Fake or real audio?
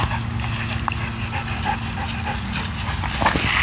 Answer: real